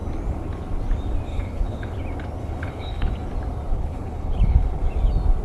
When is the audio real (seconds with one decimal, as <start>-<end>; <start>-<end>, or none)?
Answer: 0.0-1.3; 2.0-2.4; 3.1-3.7; 4.8-5.4